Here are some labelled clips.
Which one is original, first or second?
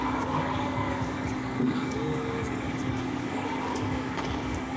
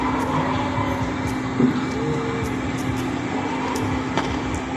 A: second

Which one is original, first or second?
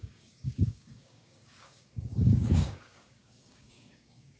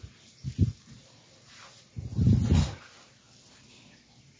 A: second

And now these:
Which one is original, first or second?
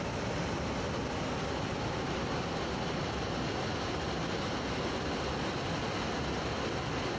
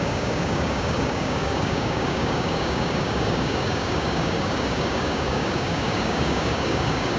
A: first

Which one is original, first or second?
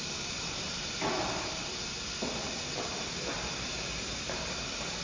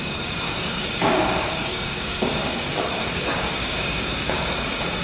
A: first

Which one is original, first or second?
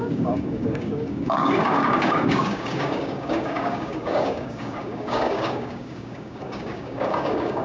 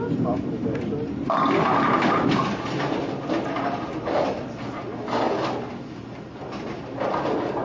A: second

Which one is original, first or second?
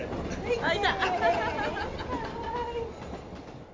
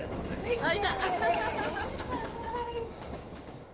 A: first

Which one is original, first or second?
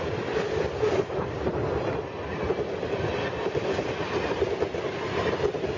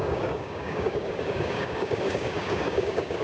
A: first